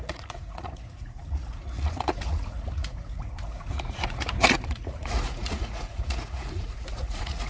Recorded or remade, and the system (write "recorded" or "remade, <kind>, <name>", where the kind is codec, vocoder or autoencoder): remade, vocoder, Vocos